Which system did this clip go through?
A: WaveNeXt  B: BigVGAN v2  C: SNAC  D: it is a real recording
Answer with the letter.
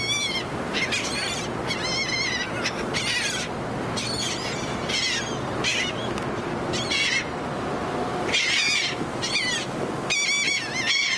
D